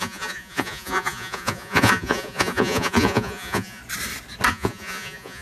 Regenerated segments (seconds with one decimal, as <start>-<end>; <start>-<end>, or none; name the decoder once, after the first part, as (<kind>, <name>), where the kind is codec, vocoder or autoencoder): 0.0-3.8 (vocoder, Vocos); 4.5-5.4